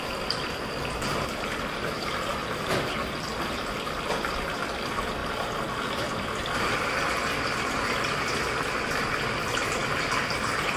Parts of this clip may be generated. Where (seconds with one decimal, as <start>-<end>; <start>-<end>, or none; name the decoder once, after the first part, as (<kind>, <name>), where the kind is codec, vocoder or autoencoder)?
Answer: 0.0-5.2 (vocoder, BigVGAN v2); 5.9-9.8; 10.3-10.8